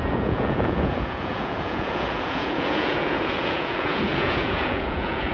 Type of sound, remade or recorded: remade